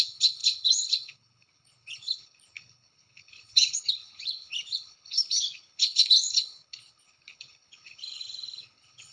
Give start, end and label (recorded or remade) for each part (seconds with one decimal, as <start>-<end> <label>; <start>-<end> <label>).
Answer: 0.0-9.1 remade